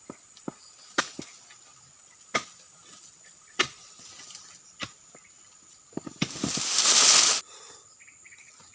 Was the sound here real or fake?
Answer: real